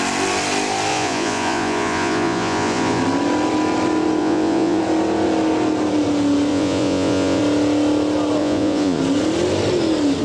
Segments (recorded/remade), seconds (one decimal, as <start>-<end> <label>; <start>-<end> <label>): 0.0-0.9 recorded; 0.9-3.0 remade; 3.0-4.2 recorded; 4.2-4.8 remade; 4.8-6.5 recorded; 6.5-7.4 remade; 7.4-8.4 recorded; 8.4-9.0 remade; 9.0-10.2 recorded